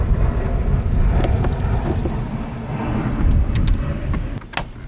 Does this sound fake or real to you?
real